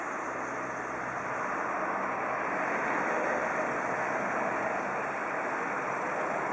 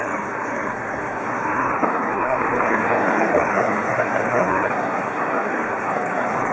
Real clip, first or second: first